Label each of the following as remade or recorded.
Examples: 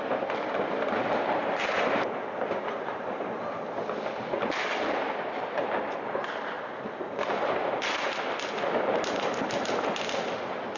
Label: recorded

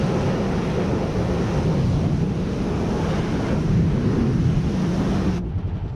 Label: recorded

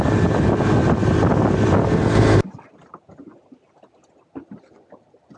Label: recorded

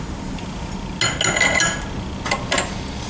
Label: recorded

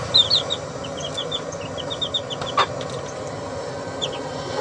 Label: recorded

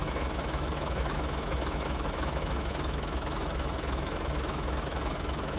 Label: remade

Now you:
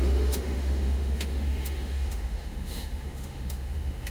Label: remade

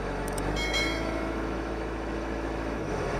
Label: remade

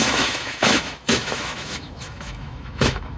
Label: remade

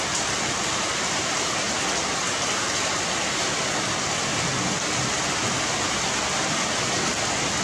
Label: recorded